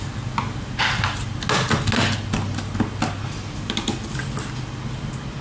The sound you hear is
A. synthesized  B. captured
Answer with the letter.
B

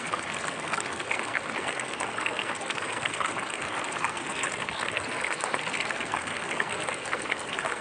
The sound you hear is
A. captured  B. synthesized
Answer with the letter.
B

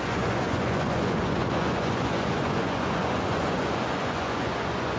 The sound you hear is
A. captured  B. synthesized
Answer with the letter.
B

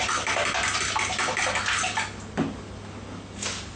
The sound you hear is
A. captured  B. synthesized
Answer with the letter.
A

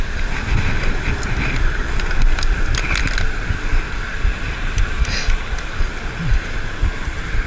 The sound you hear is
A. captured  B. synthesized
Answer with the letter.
A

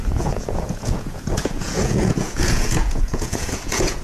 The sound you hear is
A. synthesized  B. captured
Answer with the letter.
A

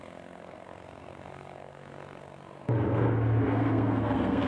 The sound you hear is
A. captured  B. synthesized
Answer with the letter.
B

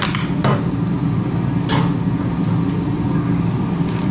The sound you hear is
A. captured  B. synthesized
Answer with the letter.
A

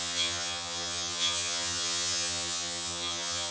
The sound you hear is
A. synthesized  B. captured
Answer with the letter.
A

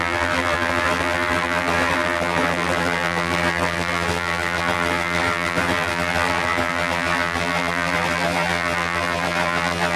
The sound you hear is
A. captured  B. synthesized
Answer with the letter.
B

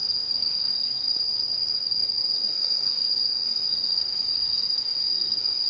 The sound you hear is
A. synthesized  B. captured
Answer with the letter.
A